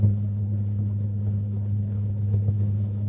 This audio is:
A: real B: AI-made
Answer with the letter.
B